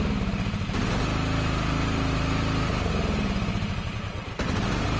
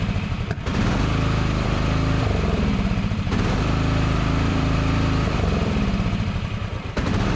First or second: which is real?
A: first